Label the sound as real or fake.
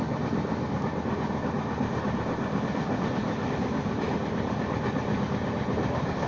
real